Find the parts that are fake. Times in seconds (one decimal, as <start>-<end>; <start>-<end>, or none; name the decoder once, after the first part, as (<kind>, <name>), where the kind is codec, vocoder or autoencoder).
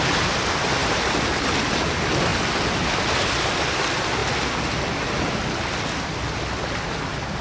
none